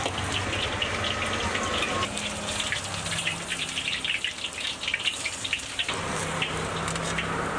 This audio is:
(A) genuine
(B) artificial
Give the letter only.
A